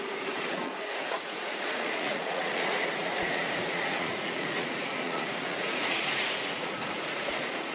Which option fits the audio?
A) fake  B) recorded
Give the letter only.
A